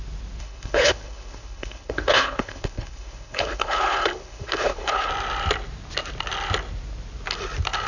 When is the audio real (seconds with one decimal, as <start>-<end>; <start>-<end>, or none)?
0.0-0.4; 5.1-7.9